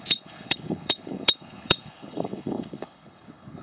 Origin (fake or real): fake